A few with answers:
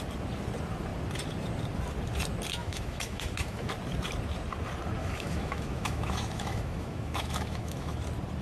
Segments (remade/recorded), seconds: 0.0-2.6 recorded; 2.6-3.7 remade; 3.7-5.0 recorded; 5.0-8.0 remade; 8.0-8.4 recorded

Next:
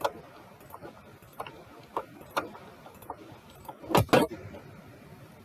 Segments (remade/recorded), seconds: 0.0-5.4 recorded

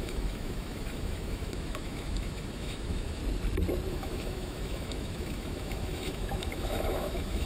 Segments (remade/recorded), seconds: 0.0-3.2 remade; 3.2-3.9 recorded; 3.9-7.5 remade

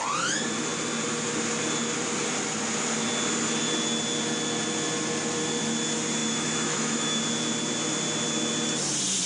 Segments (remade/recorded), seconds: 0.0-6.2 recorded; 6.2-7.2 remade; 7.2-9.3 recorded

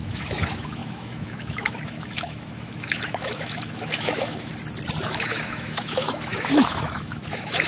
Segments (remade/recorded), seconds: 0.0-4.5 remade; 4.5-5.0 recorded; 5.0-7.7 remade

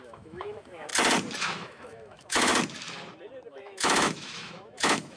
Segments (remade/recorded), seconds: 0.0-0.9 remade; 0.9-1.4 recorded; 1.4-2.5 remade; 2.5-3.5 recorded; 3.5-5.2 remade

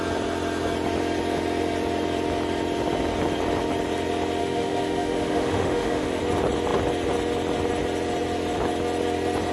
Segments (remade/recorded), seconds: 0.0-4.4 recorded; 4.4-6.2 remade; 6.2-9.5 recorded

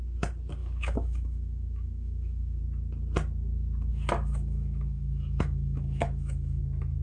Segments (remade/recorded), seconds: 0.0-0.6 recorded; 0.6-2.6 remade; 2.6-3.9 recorded; 3.9-6.6 remade; 6.6-7.0 recorded